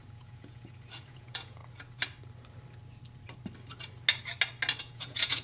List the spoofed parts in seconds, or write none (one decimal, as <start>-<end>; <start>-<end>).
0.0-1.6; 4.8-5.4